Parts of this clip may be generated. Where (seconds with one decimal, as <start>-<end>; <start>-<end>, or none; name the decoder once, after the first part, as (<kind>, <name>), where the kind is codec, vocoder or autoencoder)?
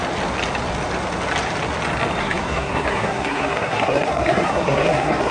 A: 2.2-5.3 (codec, SNAC)